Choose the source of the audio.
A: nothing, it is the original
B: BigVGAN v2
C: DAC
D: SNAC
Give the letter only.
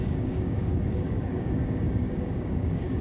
C